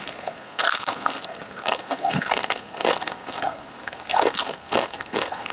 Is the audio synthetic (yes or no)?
yes